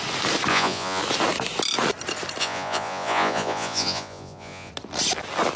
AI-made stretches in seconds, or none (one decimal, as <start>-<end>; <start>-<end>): 0.5-1.0; 2.4-4.7